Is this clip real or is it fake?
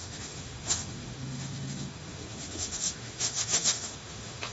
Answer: fake